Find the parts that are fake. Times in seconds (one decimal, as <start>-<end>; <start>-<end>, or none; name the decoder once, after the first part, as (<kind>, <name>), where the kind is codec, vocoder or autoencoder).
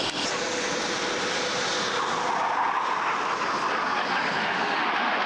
4.4-5.3 (autoencoder, DAC-VAE)